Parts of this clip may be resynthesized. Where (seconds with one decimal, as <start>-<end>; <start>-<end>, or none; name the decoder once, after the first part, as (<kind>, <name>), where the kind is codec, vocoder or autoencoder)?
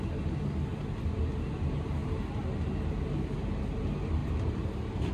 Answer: 4.2-5.1 (vocoder, BigVGAN v2)